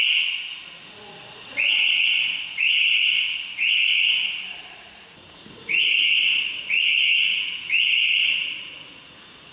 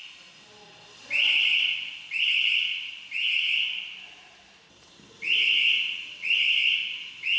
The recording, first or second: second